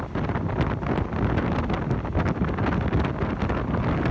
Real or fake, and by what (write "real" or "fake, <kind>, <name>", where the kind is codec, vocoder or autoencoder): real